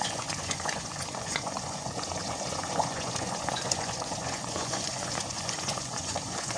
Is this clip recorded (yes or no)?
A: no